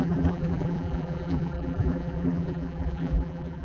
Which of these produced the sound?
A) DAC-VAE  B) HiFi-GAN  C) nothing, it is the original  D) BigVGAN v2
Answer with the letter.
D